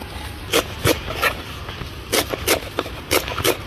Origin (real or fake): real